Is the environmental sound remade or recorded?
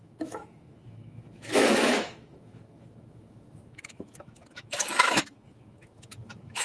remade